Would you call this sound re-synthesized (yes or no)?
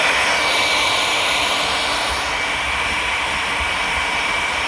yes